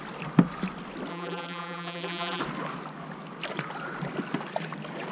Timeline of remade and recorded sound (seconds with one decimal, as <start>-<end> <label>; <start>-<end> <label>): 0.0-1.1 recorded; 1.1-2.4 remade; 2.4-5.1 recorded